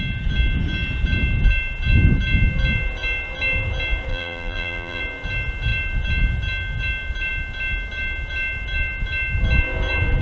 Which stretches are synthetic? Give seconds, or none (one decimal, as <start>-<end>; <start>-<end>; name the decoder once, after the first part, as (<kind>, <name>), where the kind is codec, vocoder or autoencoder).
4.1-5.0 (vocoder, BigVGAN v2)